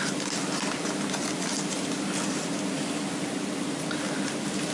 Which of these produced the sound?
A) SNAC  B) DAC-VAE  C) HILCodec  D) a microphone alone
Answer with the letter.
D